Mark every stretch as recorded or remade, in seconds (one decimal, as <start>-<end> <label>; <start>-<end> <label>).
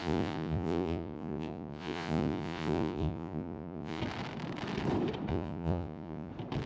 0.0-4.0 remade; 4.0-5.3 recorded; 5.3-6.3 remade; 6.3-6.7 recorded